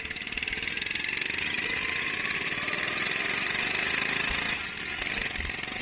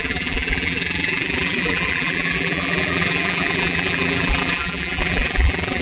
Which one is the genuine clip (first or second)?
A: first